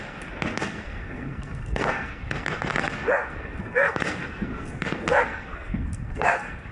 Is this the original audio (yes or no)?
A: no